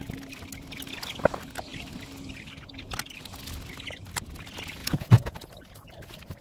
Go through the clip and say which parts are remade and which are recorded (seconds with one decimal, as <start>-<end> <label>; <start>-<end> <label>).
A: 0.0-4.8 recorded; 4.8-5.5 remade; 5.5-6.4 recorded